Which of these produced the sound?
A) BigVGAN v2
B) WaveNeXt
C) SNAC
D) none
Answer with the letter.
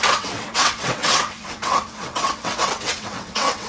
B